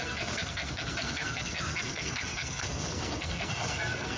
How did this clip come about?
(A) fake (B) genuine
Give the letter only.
A